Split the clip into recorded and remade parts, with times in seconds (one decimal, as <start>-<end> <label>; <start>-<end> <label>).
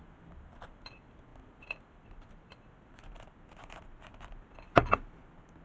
0.0-5.6 recorded